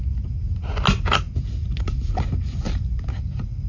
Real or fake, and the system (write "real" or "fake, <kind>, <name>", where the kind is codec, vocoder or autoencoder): real